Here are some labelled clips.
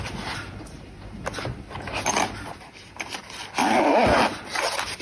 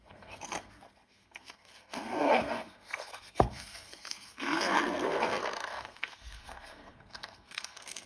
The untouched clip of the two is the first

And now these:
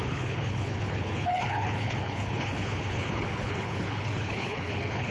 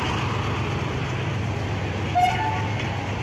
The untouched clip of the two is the second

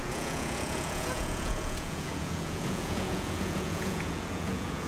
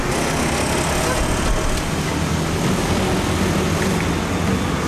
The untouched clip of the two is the second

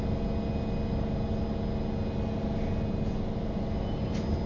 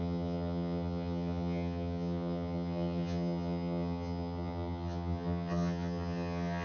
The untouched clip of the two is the first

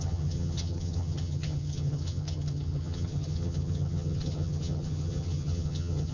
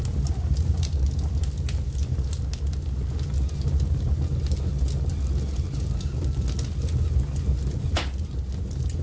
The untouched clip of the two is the second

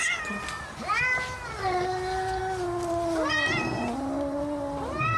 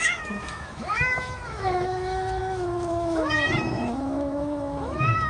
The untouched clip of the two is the first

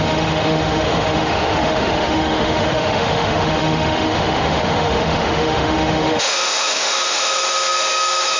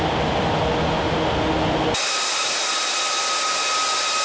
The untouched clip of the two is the second